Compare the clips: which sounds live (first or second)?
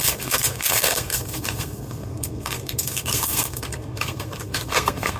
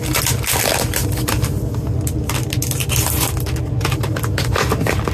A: second